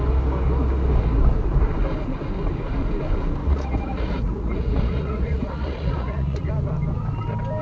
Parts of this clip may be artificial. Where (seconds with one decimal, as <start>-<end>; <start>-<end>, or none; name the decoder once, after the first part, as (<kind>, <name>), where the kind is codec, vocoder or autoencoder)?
3.4-6.5 (vocoder, Vocos)